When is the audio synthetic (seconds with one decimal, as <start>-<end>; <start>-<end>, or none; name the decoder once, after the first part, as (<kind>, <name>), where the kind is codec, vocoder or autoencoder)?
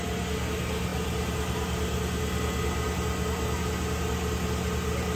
none